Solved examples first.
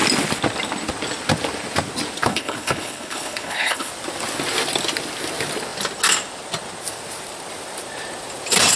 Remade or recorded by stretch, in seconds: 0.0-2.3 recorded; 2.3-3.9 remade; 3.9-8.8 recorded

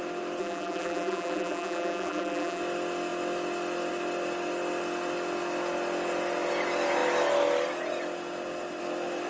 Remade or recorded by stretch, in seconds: 0.0-0.4 recorded; 0.4-2.6 remade; 2.6-9.3 recorded

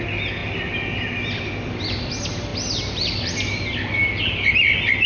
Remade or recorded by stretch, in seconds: 0.0-5.1 recorded

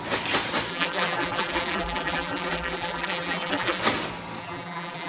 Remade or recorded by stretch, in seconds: 0.0-0.7 recorded; 0.7-3.8 remade; 3.8-4.4 recorded; 4.4-5.1 remade

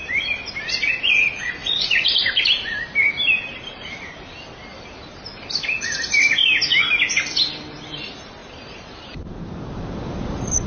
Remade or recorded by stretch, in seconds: 0.0-0.5 remade; 0.5-1.6 recorded; 1.6-3.1 remade; 3.1-4.7 recorded; 4.7-5.4 remade; 5.4-8.4 recorded; 8.4-10.7 remade

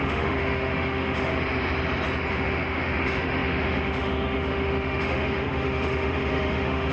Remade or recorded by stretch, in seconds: 0.0-1.3 remade; 1.3-2.3 recorded; 2.3-6.9 remade

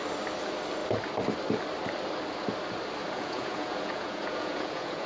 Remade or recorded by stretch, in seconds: 0.0-3.0 recorded; 3.0-5.1 remade